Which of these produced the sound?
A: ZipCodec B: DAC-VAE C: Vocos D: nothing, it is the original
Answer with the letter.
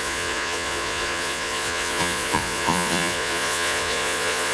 C